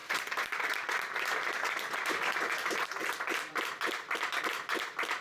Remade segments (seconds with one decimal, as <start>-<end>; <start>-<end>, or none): 3.0-3.5